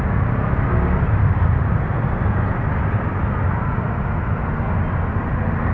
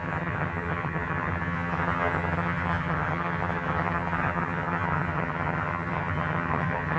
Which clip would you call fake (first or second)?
second